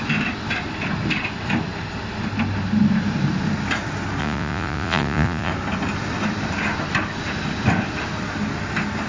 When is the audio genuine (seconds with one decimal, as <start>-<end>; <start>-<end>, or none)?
0.0-4.2; 5.5-9.1